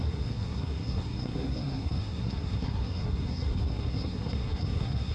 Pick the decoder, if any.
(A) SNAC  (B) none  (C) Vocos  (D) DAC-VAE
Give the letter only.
A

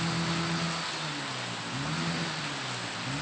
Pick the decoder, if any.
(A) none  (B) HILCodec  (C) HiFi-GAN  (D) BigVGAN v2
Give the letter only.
A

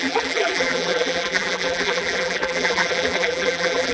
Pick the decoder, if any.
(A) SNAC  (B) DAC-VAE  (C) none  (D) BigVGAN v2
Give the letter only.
D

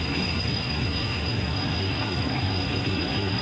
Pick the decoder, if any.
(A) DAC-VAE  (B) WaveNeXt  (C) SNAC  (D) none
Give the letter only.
C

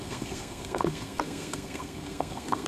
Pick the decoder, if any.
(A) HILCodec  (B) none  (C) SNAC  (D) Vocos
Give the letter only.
C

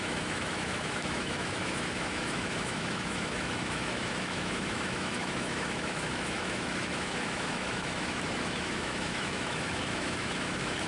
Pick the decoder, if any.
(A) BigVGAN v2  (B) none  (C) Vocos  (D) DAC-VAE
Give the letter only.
D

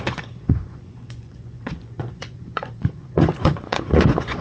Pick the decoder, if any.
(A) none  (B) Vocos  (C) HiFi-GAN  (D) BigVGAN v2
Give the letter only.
B